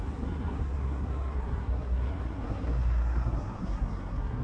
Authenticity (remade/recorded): remade